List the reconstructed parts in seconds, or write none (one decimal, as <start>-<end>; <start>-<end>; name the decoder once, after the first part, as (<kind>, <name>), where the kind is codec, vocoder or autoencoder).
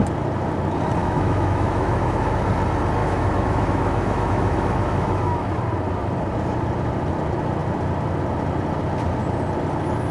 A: 1.0-2.4 (autoencoder, DAC-VAE); 3.0-5.5